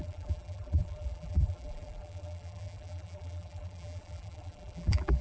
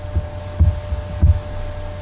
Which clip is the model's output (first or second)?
first